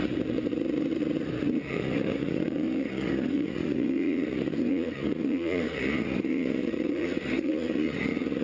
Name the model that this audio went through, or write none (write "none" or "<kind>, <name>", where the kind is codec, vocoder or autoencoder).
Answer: vocoder, Vocos